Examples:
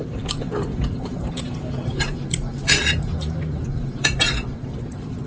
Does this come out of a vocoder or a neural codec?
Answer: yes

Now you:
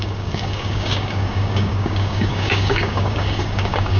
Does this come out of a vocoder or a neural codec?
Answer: yes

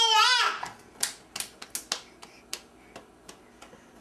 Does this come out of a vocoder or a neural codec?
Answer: no